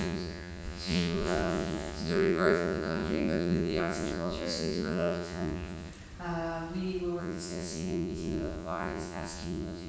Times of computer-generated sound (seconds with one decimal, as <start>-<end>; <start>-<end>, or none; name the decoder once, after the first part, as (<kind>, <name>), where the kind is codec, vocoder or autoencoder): 0.0-5.9 (vocoder, Vocos); 7.2-9.9